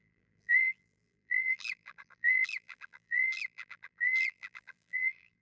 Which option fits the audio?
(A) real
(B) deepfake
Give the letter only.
B